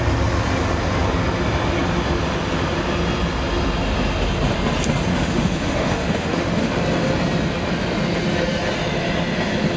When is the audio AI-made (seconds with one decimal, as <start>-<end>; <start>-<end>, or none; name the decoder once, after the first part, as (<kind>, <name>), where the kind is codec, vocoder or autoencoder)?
5.1-6.7 (autoencoder, DAC-VAE)